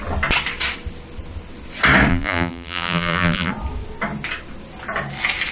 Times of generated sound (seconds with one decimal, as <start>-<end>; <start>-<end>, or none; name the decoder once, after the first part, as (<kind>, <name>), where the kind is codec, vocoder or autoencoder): 2.1-3.5 (vocoder, BigVGAN v2)